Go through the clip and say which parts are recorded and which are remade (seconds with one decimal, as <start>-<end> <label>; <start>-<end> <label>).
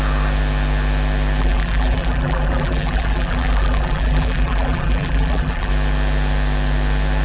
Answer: 0.0-1.4 recorded; 1.4-5.7 remade; 5.7-7.2 recorded